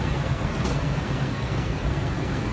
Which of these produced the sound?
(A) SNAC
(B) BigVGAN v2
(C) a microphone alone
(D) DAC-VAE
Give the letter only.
A